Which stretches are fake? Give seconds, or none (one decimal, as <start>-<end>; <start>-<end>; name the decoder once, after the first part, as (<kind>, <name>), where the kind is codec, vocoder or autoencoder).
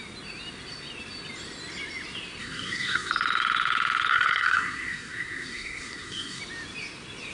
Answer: 2.4-3.1 (codec, SNAC); 4.1-6.4